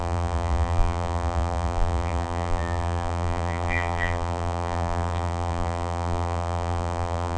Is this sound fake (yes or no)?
yes